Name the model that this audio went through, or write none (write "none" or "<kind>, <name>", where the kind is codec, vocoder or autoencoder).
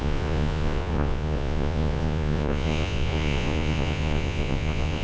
vocoder, Vocos